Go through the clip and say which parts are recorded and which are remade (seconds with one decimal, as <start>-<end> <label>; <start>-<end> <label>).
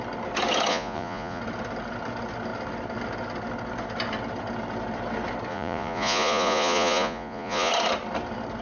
0.0-0.7 recorded; 0.7-1.4 remade; 1.4-5.5 recorded; 5.5-7.7 remade; 7.7-8.6 recorded